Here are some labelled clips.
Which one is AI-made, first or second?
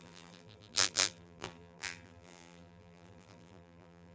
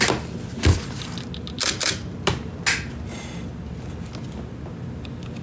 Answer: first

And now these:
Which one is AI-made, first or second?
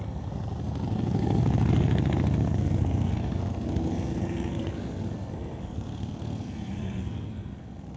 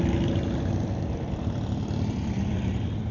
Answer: first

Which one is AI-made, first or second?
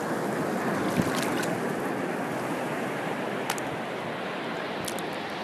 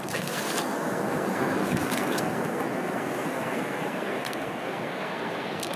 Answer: second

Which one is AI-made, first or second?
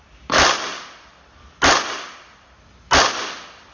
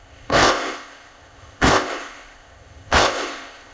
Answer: second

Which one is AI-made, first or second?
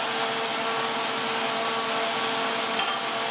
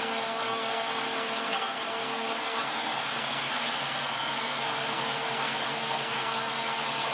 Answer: second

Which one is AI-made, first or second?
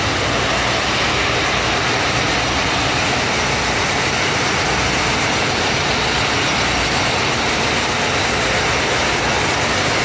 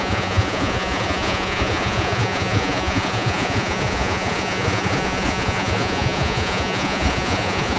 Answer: second